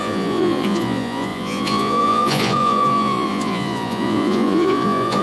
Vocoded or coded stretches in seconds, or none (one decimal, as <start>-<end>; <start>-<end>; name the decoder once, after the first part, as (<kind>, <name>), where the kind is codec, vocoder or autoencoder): 0.0-5.2 (vocoder, Vocos)